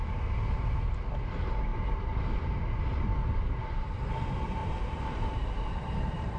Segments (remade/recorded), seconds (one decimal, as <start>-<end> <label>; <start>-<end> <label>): 0.0-4.6 recorded; 4.6-6.4 remade

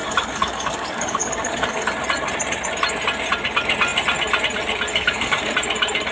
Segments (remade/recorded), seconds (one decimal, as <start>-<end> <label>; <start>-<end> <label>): 0.0-1.9 remade; 1.9-4.9 recorded; 4.9-5.5 remade; 5.5-6.1 recorded

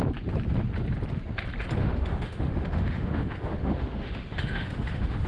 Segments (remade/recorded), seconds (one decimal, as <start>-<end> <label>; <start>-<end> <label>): 0.0-1.8 recorded; 1.8-5.3 remade

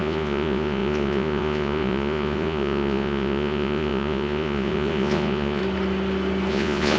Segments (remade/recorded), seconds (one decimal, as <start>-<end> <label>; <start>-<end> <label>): 0.0-5.6 remade; 5.6-6.5 recorded; 6.5-7.0 remade

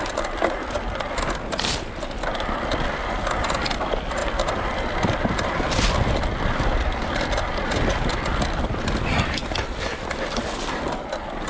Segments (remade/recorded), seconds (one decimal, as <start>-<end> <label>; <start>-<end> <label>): 0.0-11.5 recorded

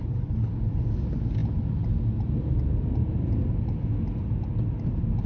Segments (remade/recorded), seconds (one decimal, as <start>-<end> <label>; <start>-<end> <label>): 0.0-0.5 remade; 0.5-5.3 recorded

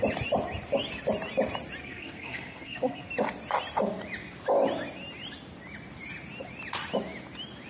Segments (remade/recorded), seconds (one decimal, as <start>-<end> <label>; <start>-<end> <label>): 0.0-1.8 recorded; 1.8-3.1 remade; 3.1-7.7 recorded